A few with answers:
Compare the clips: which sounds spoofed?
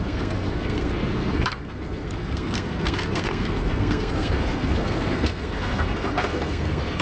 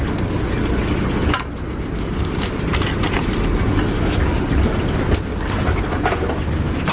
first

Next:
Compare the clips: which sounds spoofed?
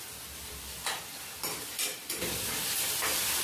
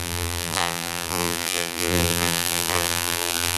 second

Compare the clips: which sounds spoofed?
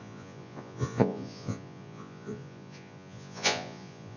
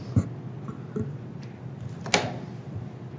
first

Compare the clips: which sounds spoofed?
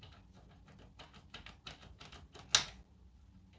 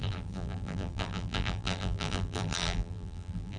second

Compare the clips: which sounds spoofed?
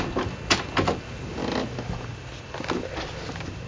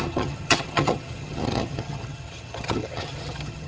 second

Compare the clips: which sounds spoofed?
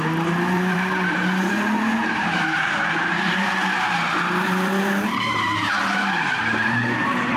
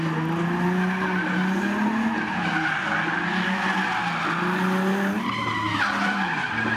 first